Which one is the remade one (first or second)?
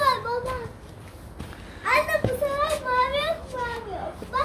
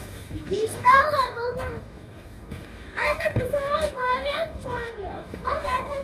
second